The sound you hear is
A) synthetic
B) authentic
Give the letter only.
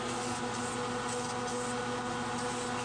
B